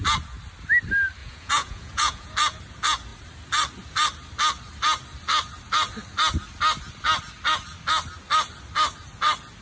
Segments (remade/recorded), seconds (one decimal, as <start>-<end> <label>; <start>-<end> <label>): 0.0-1.2 recorded; 1.2-2.3 remade; 2.3-9.6 recorded